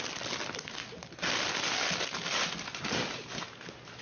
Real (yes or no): yes